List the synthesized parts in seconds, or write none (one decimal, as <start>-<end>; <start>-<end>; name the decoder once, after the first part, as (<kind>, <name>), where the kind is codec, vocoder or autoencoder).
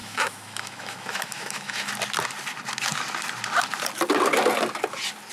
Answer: 0.0-1.9 (autoencoder, DAC-VAE)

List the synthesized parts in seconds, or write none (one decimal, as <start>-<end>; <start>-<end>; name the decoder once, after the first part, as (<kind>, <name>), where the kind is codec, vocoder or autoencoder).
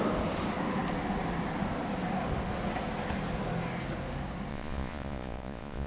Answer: 4.5-5.9 (vocoder, Vocos)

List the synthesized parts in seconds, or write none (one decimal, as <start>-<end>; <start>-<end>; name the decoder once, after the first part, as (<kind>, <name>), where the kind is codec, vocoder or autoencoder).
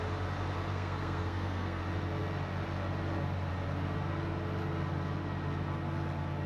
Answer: 0.7-1.8 (codec, SNAC)